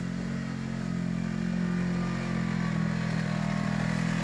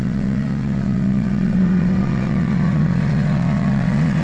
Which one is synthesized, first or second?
second